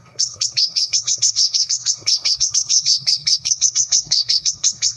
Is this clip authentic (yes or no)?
no